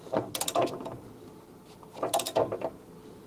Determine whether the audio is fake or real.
real